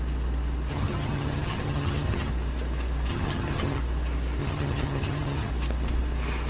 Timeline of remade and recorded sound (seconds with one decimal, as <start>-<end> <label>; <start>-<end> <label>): 0.0-0.7 recorded; 0.7-2.3 remade; 2.3-3.1 recorded; 3.1-3.8 remade; 3.8-4.4 recorded; 4.4-5.5 remade; 5.5-6.5 recorded